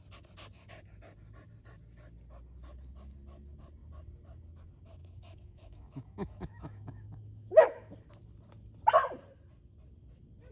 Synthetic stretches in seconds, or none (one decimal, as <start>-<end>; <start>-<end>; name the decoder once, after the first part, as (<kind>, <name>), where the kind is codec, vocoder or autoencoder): 5.0-7.9 (autoencoder, DAC-VAE)